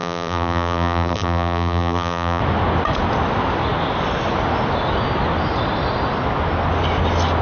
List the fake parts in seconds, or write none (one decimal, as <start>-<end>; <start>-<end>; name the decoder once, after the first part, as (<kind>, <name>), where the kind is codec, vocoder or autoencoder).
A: 0.0-2.4 (vocoder, BigVGAN v2)